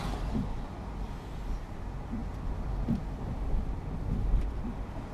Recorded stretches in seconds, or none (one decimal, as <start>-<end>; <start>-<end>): 0.0-5.1